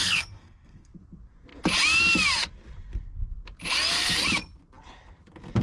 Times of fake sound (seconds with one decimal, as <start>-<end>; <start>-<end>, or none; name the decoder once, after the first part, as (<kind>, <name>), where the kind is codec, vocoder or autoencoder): 0.0-0.9 (codec, SNAC)